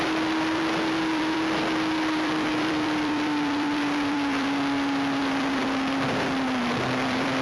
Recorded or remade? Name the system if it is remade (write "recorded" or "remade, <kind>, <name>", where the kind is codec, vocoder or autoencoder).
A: remade, vocoder, BigVGAN v2